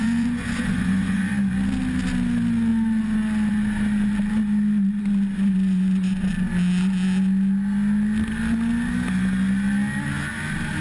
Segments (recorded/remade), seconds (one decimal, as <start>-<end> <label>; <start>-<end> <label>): 0.0-1.3 remade; 1.3-5.3 recorded; 5.3-6.3 remade; 6.3-10.8 recorded